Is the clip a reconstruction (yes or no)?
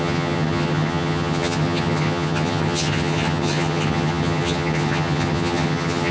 yes